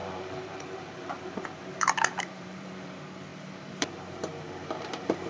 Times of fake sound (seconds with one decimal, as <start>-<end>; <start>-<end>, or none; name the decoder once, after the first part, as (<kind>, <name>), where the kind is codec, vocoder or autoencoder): 0.0-2.9 (vocoder, BigVGAN v2); 3.3-5.3